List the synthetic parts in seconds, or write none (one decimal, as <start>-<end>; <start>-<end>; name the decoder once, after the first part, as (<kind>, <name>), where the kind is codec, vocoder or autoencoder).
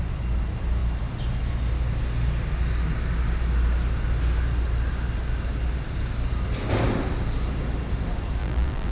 8.4-8.9 (vocoder, BigVGAN v2)